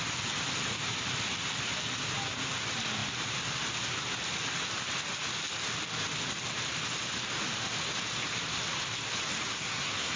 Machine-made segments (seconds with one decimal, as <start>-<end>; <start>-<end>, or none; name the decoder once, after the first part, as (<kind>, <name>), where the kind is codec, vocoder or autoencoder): 9.5-10.2 (codec, SNAC)